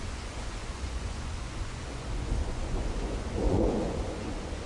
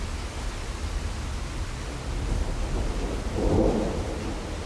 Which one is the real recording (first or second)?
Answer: second